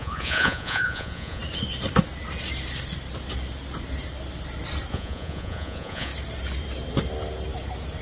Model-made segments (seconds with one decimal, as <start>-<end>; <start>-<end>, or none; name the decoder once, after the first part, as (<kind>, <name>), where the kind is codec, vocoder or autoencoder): 0.0-1.4 (vocoder, Vocos); 4.9-6.1